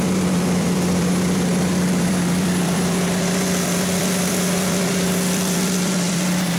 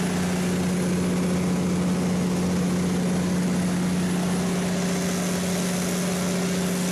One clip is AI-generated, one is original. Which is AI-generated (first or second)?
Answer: first